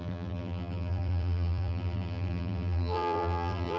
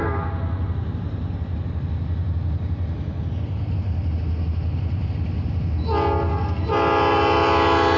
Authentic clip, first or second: second